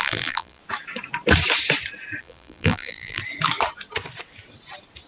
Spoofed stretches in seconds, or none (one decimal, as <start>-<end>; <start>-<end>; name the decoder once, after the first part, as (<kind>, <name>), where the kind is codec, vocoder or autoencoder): 0.0-0.6 (vocoder, BigVGAN v2); 2.2-3.2